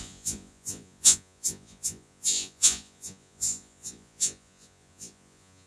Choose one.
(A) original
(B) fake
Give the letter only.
B